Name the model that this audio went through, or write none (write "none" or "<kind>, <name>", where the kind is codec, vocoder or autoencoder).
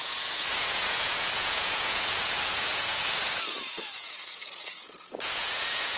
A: vocoder, Vocos